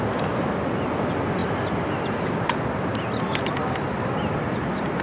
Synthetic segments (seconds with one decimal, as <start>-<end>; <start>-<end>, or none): 1.4-2.5